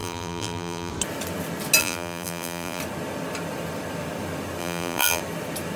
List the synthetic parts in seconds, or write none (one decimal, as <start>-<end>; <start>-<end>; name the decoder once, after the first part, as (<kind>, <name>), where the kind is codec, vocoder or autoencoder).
0.0-0.9 (vocoder, BigVGAN v2); 1.8-2.8; 4.6-5.2